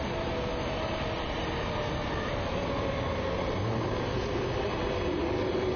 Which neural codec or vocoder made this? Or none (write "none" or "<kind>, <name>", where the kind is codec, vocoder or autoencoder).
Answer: none